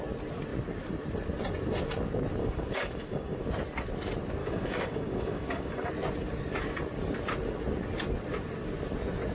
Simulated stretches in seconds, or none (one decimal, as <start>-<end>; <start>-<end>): 2.4-3.5; 4.4-5.9